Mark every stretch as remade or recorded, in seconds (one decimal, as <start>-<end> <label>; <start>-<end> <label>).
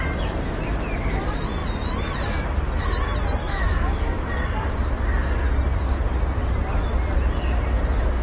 0.0-3.4 recorded; 3.4-4.3 remade; 4.3-8.2 recorded